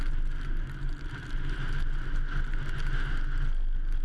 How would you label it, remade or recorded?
recorded